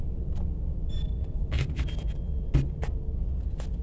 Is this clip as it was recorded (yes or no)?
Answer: yes